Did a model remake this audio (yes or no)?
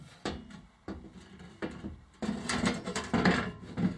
no